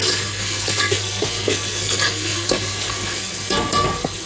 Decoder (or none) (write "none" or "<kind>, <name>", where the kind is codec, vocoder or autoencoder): codec, SNAC